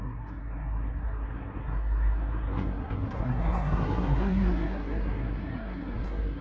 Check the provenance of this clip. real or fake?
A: fake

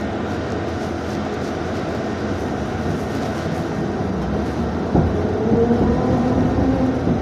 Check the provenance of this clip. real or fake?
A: real